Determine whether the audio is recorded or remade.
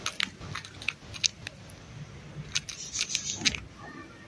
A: recorded